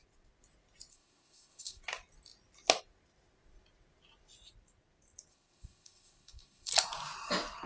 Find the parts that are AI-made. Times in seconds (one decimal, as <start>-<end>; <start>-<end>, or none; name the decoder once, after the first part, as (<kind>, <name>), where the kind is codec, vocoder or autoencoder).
0.9-1.8 (codec, ZipCodec); 5.3-6.7